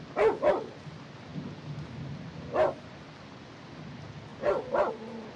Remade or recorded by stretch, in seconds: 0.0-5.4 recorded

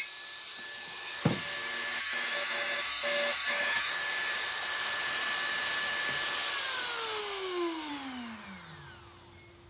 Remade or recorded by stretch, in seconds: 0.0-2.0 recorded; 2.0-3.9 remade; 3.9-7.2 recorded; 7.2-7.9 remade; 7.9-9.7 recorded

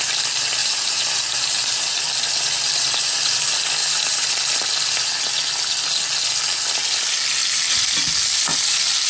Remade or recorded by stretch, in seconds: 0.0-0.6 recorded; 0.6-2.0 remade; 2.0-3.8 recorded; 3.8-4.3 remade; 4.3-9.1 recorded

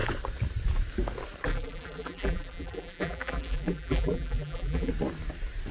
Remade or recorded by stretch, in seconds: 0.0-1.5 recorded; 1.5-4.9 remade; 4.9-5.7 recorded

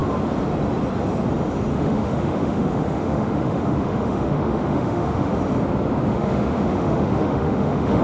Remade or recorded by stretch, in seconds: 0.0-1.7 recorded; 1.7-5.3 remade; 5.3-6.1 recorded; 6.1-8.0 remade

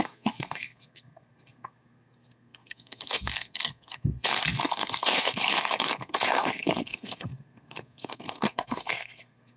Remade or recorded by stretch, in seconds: 0.0-9.6 remade